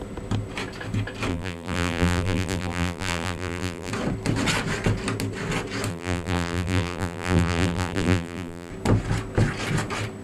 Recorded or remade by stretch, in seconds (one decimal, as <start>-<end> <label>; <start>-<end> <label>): 0.0-1.3 recorded; 1.3-3.9 remade; 3.9-5.9 recorded; 5.9-8.7 remade; 8.7-10.2 recorded